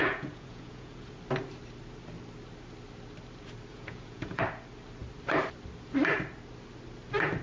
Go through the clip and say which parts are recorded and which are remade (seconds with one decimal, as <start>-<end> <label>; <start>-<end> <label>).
0.0-1.1 remade; 1.1-3.7 recorded; 3.7-4.4 remade; 4.4-7.4 recorded